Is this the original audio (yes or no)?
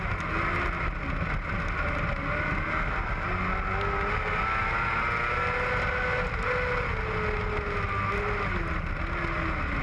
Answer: yes